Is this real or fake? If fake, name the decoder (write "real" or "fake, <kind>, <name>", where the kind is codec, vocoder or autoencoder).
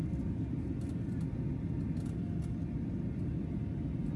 real